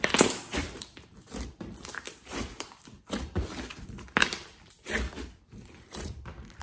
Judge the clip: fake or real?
fake